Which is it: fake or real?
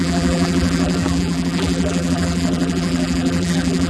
fake